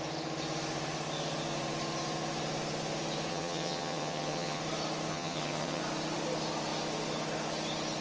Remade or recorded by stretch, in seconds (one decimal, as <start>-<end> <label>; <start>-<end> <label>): 0.0-3.3 recorded; 3.3-4.6 remade; 4.6-5.1 recorded; 5.1-5.8 remade; 5.8-8.0 recorded